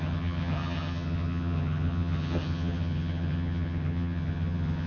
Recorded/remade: remade